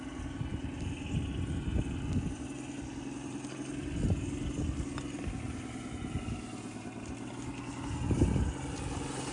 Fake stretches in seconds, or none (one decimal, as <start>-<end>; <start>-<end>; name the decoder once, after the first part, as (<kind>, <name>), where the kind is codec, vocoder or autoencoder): none